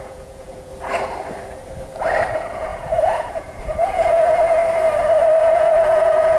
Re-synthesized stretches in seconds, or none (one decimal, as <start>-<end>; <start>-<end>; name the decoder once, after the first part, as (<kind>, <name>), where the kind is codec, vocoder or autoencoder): 0.0-0.7 (vocoder, Vocos); 2.3-4.6; 5.4-6.4